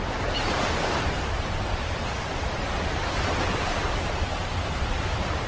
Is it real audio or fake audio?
fake